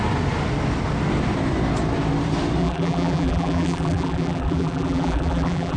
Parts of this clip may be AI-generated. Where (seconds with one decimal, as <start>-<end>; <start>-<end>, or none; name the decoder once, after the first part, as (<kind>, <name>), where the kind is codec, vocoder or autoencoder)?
2.6-5.8 (vocoder, BigVGAN v2)